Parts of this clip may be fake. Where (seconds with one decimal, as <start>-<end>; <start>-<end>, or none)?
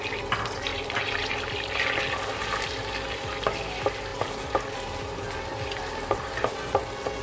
none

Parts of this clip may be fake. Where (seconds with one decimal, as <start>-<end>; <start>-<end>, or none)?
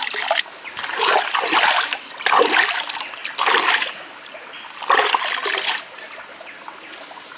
none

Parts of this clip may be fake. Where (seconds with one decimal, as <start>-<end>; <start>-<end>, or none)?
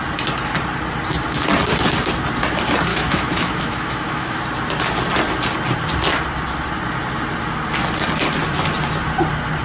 2.9-4.4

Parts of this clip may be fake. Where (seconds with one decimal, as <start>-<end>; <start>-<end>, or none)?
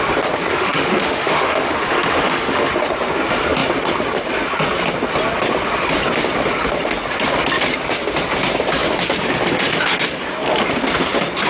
0.5-2.7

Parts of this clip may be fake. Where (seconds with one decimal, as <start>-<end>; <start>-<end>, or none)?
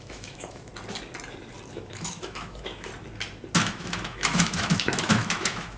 0.0-0.7; 1.7-2.9; 3.6-5.8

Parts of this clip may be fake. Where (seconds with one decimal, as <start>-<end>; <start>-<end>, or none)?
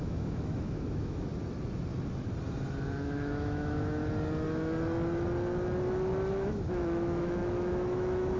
0.0-1.3; 2.9-4.0; 6.3-8.4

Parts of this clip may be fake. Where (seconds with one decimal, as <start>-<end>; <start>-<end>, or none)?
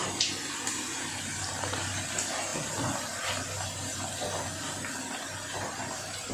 none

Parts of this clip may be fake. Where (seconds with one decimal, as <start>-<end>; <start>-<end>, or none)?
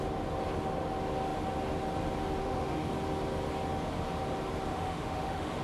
2.4-2.9; 4.7-5.6